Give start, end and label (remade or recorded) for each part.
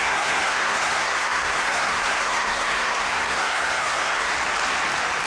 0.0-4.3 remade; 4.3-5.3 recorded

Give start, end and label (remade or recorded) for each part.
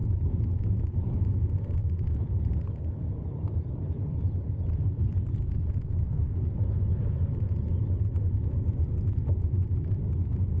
0.0-1.8 recorded; 1.8-6.3 remade; 6.3-10.6 recorded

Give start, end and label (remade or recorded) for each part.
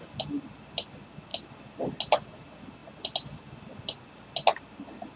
0.0-5.2 recorded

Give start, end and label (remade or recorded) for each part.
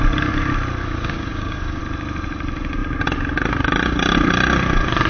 0.0-0.8 recorded; 0.8-1.8 remade; 1.8-5.1 recorded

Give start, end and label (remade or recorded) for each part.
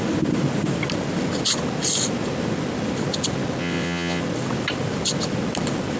0.0-3.6 recorded; 3.6-4.2 remade; 4.2-6.0 recorded